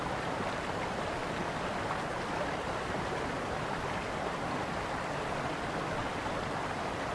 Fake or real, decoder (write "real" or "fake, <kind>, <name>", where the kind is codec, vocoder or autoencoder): real